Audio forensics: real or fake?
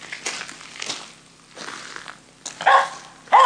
real